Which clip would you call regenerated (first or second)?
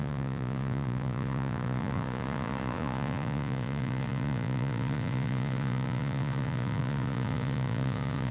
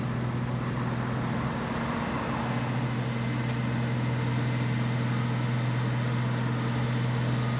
first